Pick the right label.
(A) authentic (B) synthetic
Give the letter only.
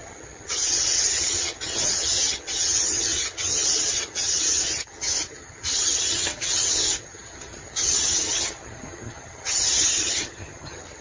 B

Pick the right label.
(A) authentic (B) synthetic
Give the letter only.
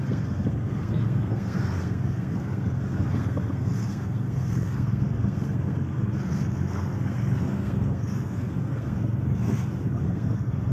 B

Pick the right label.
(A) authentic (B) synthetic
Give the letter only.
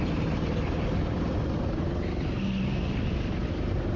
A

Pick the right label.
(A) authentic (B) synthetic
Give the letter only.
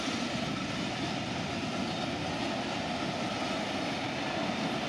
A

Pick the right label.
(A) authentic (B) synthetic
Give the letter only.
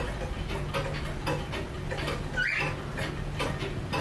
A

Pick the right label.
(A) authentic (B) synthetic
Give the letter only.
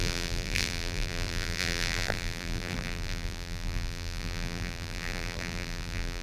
B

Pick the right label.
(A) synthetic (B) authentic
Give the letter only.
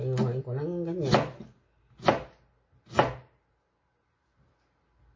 B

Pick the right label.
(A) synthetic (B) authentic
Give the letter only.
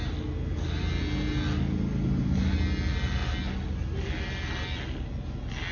B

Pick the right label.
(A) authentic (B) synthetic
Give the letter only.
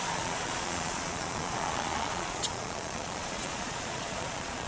B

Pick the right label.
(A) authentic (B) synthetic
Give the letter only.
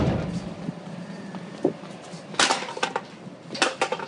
A